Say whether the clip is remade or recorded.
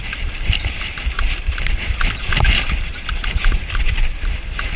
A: remade